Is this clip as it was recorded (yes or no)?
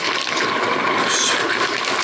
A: yes